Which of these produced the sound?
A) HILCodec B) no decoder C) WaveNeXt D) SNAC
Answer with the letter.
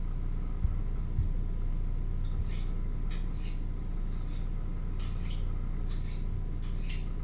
B